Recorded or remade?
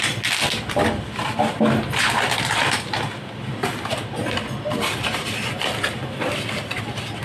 recorded